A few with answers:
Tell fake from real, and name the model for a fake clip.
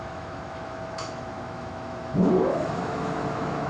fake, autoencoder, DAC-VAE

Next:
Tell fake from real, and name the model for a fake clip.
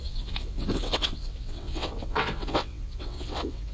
fake, vocoder, WaveNeXt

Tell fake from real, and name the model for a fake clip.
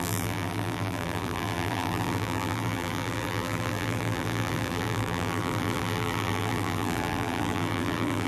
fake, vocoder, BigVGAN v2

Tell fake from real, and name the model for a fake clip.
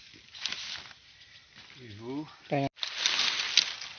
real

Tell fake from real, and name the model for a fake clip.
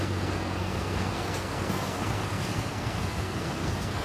fake, codec, SNAC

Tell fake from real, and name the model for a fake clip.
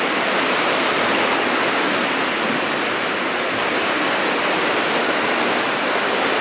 real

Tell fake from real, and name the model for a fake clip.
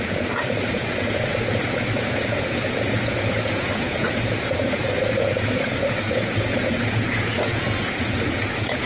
fake, vocoder, Vocos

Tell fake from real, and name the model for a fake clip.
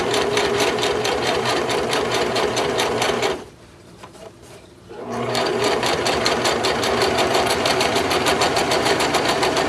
fake, vocoder, BigVGAN v2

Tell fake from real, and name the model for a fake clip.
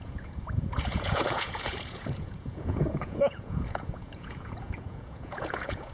fake, vocoder, Vocos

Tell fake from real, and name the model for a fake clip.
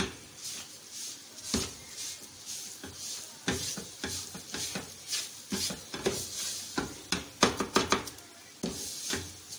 real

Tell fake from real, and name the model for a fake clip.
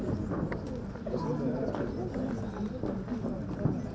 real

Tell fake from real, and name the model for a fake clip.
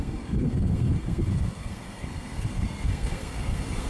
fake, codec, SNAC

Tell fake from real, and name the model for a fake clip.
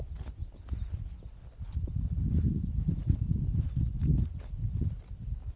real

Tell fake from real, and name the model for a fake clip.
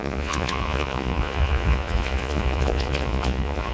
fake, vocoder, Vocos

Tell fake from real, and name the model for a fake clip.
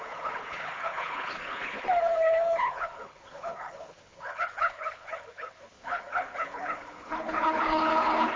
fake, codec, HILCodec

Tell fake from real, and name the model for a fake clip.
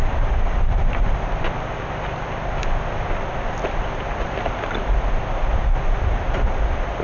real